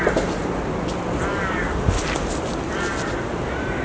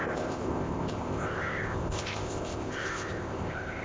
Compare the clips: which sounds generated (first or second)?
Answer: second